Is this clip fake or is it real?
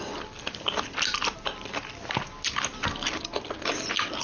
real